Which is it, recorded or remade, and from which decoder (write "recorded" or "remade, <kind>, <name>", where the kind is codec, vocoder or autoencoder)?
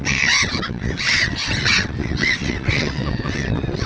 remade, vocoder, WaveNeXt